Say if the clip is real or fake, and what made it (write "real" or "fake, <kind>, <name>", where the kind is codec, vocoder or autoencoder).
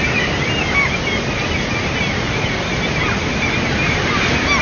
real